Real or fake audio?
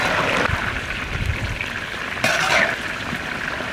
fake